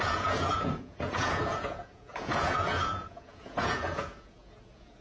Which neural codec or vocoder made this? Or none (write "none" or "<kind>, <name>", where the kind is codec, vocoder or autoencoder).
vocoder, Vocos